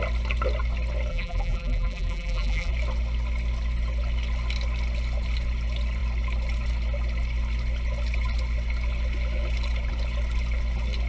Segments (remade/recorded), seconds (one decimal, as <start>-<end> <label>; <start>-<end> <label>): 0.0-1.1 recorded; 1.1-2.7 remade; 2.7-11.1 recorded